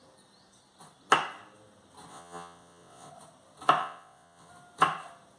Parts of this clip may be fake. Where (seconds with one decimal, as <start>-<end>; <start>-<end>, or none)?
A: 2.1-3.1; 3.8-4.5